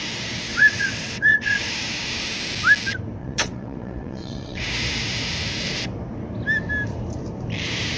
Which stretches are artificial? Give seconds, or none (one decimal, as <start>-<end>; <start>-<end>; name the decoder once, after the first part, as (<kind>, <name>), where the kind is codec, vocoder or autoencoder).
0.5-1.7 (vocoder, WaveNeXt); 3.2-4.6